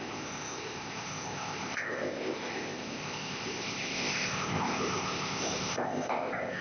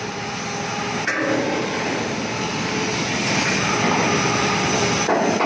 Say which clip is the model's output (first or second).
first